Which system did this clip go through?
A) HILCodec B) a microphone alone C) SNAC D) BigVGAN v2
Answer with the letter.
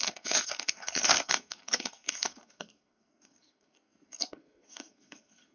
C